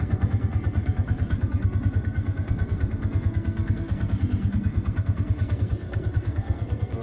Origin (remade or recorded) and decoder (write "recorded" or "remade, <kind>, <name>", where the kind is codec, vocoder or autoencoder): remade, codec, SNAC